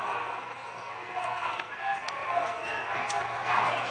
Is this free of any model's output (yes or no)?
no